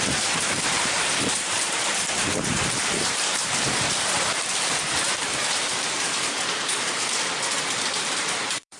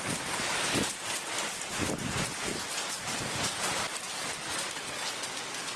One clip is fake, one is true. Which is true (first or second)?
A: second